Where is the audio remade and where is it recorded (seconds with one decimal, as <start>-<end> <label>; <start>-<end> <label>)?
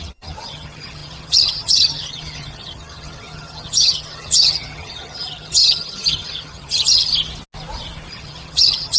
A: 0.0-7.1 remade; 7.1-8.1 recorded; 8.1-9.0 remade